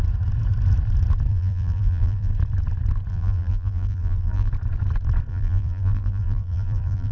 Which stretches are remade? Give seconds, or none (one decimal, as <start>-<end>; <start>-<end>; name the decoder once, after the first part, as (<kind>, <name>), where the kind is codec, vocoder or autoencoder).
1.3-2.3 (vocoder, BigVGAN v2); 3.1-4.5; 5.3-7.1